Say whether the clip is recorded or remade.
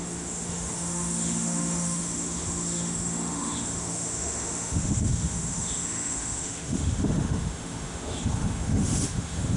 remade